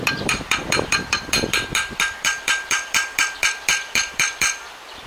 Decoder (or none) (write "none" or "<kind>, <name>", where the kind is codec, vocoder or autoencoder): vocoder, BigVGAN v2